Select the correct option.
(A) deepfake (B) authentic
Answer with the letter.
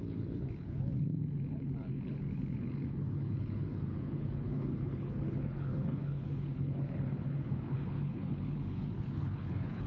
A